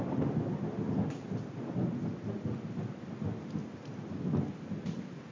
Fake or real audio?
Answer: real